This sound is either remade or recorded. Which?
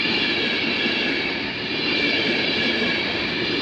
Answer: recorded